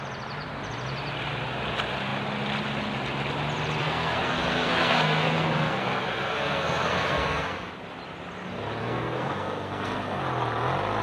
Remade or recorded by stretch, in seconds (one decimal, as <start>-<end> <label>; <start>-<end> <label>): 0.0-3.8 recorded; 3.8-7.7 remade; 7.7-8.8 recorded; 8.8-10.2 remade; 10.2-11.0 recorded